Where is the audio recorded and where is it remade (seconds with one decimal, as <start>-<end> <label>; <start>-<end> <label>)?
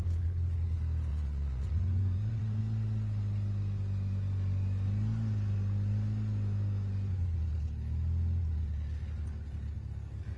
0.0-1.1 recorded; 1.1-2.6 remade; 2.6-10.4 recorded